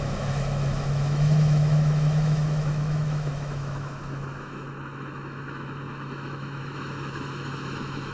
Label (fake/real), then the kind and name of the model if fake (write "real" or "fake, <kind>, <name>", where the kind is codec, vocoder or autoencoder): fake, autoencoder, DAC-VAE